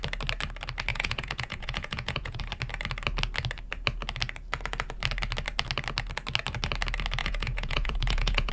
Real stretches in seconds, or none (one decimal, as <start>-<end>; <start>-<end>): 0.0-0.9; 2.4-7.2